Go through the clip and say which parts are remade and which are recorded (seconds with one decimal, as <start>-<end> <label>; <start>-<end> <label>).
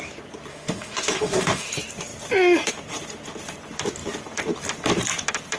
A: 0.0-0.5 recorded; 0.5-1.7 remade; 1.7-5.6 recorded